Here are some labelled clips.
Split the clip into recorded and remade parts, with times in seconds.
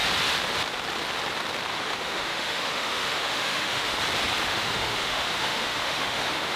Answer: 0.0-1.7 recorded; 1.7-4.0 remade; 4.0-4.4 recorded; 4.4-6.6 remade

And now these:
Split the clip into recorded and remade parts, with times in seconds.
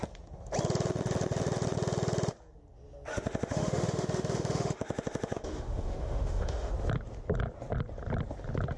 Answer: 0.0-3.1 recorded; 3.1-6.7 remade; 6.7-8.8 recorded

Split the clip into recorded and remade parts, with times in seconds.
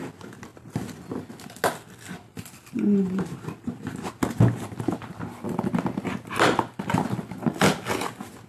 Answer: 0.0-8.5 recorded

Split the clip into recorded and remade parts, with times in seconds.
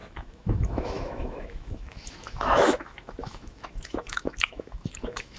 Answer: 0.0-5.4 remade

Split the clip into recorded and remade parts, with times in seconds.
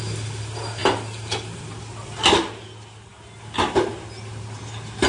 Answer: 0.0-5.1 recorded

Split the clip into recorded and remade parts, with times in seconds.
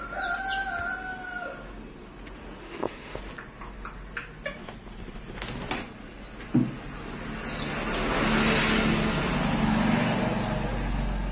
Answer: 0.0-2.6 recorded; 2.6-3.2 remade; 3.2-11.3 recorded